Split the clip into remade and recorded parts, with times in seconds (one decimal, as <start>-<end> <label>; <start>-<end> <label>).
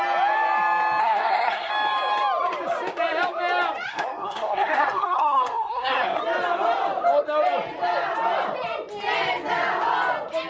0.0-1.0 recorded; 1.0-1.7 remade; 1.7-3.9 recorded; 3.9-6.2 remade; 6.2-10.5 recorded